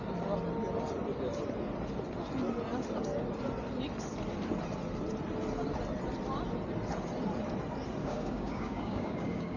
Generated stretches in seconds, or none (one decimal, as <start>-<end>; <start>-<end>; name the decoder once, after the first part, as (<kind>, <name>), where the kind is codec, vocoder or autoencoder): 8.0-9.6 (codec, DAC)